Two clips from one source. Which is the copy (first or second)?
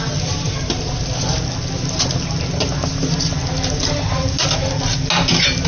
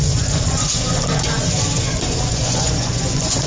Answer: second